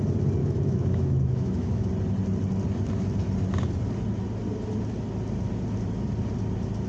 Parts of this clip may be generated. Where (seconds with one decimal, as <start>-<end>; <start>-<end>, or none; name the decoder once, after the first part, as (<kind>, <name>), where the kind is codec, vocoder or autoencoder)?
0.4-1.9 (autoencoder, DAC-VAE)